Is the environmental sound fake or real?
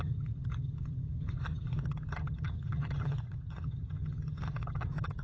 fake